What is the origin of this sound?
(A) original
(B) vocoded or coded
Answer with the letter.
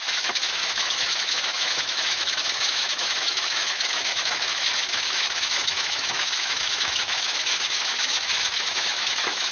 B